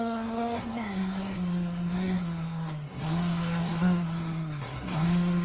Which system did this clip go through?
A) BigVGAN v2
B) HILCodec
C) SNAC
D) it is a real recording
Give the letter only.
C